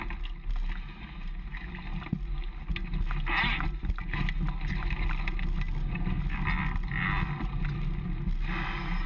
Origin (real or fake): real